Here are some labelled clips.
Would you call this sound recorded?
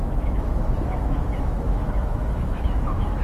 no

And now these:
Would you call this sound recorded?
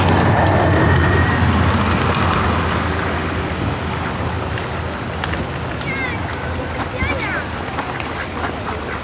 yes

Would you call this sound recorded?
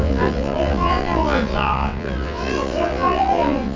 no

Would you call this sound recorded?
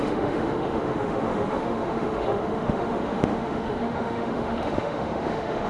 no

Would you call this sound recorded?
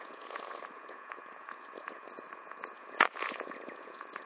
no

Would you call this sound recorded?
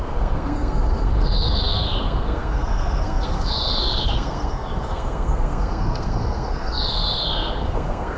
no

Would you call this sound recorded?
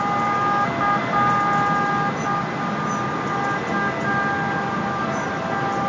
yes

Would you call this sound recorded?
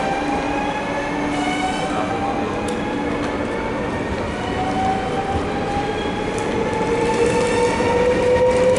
yes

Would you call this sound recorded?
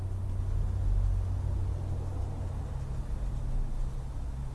yes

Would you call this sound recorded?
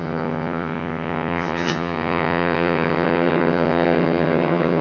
no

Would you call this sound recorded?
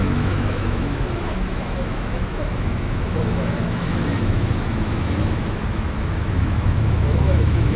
no